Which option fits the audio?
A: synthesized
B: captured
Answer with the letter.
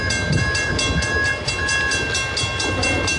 B